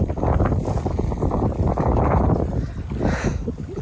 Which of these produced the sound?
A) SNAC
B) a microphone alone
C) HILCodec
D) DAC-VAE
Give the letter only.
B